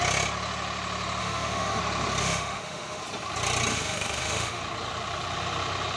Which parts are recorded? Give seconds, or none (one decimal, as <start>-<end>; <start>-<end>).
0.0-1.2; 1.8-2.2; 3.0-3.7; 4.6-6.0